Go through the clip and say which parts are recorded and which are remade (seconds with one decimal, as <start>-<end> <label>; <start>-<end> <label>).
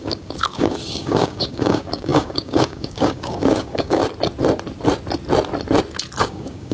0.0-4.0 remade; 4.0-6.2 recorded; 6.2-6.7 remade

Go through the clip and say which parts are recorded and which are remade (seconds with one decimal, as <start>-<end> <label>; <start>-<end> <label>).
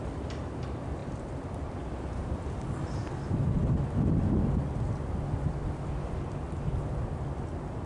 0.0-7.9 recorded